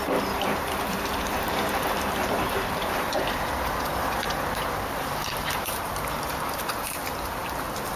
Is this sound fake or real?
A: fake